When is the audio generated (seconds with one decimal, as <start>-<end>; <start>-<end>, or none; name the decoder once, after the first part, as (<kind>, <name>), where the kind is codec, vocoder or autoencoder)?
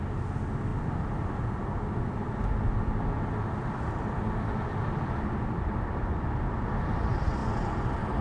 none